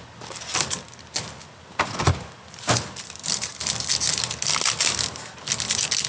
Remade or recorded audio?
recorded